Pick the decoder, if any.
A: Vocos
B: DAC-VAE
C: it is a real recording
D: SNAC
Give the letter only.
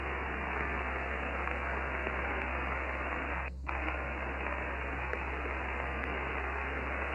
D